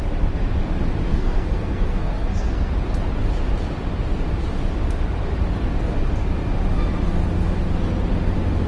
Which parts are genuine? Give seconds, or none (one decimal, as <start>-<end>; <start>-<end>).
0.0-1.1; 2.7-8.7